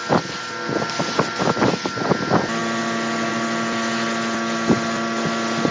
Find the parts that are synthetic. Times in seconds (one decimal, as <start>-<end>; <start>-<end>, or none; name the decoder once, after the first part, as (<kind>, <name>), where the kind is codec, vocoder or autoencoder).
none

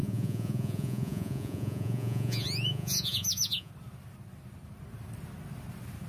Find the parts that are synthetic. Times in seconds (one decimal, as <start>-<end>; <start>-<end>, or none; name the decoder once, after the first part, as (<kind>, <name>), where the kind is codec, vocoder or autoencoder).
0.0-3.7 (vocoder, Vocos)

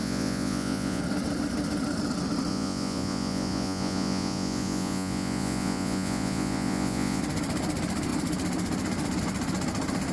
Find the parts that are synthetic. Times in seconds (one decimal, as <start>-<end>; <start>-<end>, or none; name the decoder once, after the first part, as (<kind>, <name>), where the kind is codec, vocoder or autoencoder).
0.0-1.0 (vocoder, Vocos); 2.5-7.2